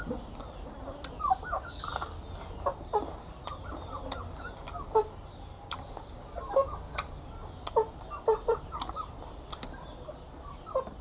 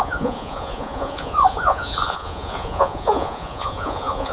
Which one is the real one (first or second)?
first